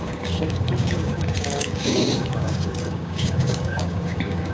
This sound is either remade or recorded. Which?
remade